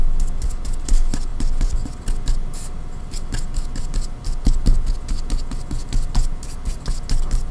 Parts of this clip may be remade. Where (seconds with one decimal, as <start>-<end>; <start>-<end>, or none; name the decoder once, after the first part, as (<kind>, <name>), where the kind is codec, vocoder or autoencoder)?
none